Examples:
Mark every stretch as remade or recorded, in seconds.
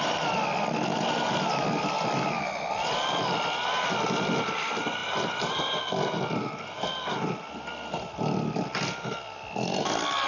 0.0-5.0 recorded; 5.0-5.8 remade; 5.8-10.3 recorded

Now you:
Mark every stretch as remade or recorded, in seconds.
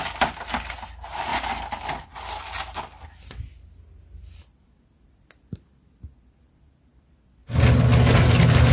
0.0-8.7 recorded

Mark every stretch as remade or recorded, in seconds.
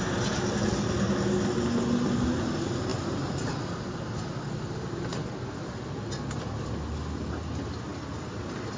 0.0-2.9 recorded; 2.9-3.5 remade; 3.5-5.1 recorded; 5.1-6.7 remade; 6.7-8.8 recorded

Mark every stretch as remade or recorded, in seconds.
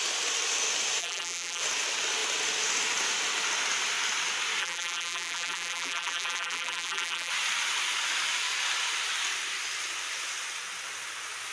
0.0-1.0 recorded; 1.0-1.6 remade; 1.6-4.6 recorded; 4.6-7.3 remade; 7.3-11.5 recorded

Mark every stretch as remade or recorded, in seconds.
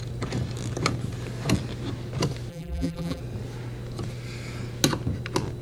0.0-2.5 recorded; 2.5-3.2 remade; 3.2-5.6 recorded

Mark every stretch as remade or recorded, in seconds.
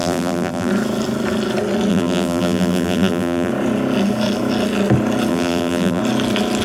0.0-0.7 remade; 0.7-1.9 recorded; 1.9-3.5 remade; 3.5-5.3 recorded; 5.3-6.0 remade; 6.0-6.6 recorded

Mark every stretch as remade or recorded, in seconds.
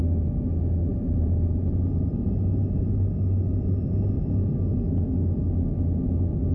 0.0-0.9 recorded; 0.9-4.8 remade; 4.8-6.5 recorded